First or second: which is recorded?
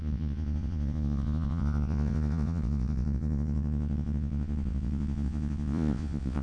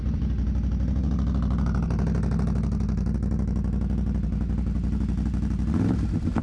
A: second